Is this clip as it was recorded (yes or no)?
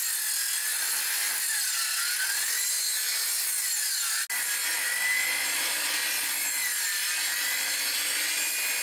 yes